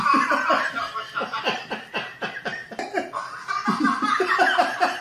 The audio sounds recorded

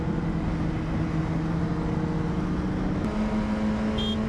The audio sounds recorded